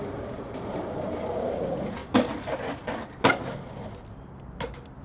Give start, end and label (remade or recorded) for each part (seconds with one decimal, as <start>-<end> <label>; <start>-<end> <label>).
0.0-2.0 remade; 2.0-5.0 recorded